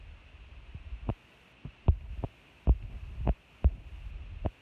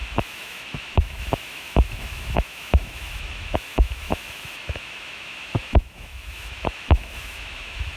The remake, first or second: second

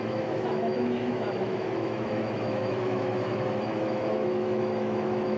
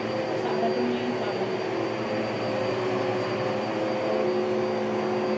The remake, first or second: first